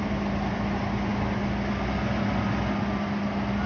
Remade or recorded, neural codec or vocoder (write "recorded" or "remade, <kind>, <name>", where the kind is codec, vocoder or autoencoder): recorded